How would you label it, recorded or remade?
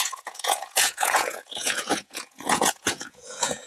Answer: remade